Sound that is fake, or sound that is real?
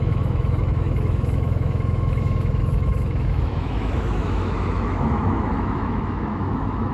fake